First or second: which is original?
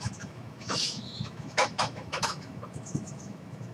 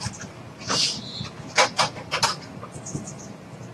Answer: second